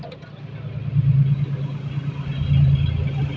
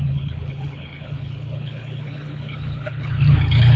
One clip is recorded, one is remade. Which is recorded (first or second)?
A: first